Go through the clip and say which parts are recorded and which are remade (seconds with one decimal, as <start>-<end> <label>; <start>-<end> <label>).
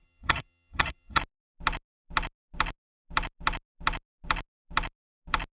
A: 0.0-1.2 remade; 1.2-5.5 recorded